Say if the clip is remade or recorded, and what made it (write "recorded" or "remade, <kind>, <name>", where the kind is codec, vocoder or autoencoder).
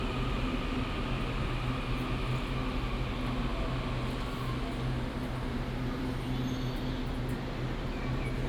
recorded